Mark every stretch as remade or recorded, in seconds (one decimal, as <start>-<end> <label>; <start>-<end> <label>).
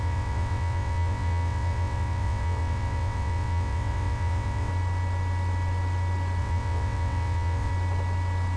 0.0-4.7 remade; 4.7-6.4 recorded; 6.4-7.7 remade; 7.7-8.6 recorded